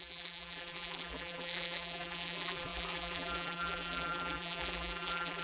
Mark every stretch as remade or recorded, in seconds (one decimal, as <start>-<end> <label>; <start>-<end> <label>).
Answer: 0.0-5.4 remade